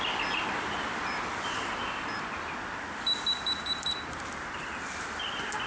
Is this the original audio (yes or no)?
no